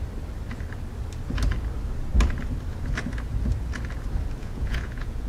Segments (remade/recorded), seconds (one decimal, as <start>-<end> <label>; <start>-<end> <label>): 0.0-4.4 recorded; 4.4-5.3 remade